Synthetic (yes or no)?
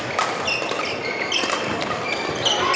no